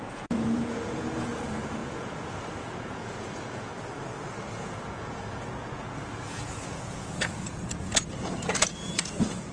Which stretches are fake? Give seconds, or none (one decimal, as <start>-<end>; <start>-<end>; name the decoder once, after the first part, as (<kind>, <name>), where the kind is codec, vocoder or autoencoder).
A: 0.0-3.7 (vocoder, Vocos); 4.5-9.5